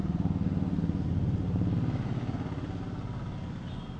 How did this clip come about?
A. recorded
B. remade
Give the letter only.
A